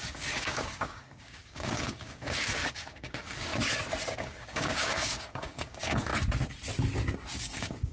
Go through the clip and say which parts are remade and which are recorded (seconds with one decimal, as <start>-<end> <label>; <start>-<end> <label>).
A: 0.0-3.5 remade; 3.5-4.1 recorded; 4.1-6.1 remade; 6.1-7.4 recorded; 7.4-7.9 remade